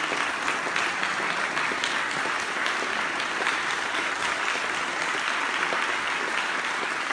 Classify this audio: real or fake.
real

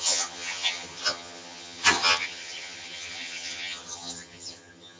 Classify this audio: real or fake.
fake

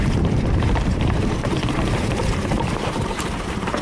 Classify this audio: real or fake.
fake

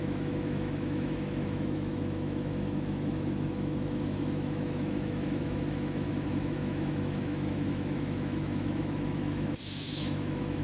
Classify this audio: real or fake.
fake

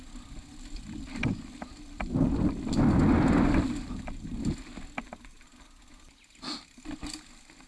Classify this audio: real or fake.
real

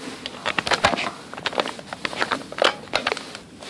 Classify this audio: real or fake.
real